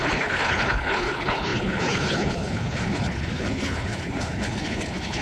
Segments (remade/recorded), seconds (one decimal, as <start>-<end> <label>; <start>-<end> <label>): 0.0-5.2 remade